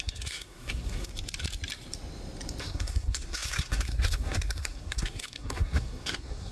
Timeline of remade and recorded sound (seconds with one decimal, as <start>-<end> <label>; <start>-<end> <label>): 0.0-1.1 remade; 1.1-2.6 recorded; 2.6-6.5 remade